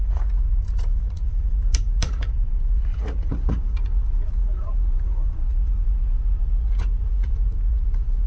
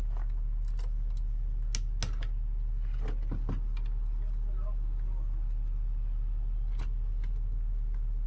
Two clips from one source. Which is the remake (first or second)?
first